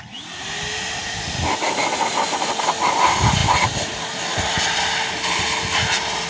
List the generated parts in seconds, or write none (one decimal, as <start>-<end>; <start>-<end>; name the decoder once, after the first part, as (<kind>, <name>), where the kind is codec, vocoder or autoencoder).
none